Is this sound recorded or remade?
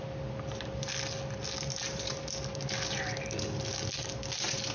recorded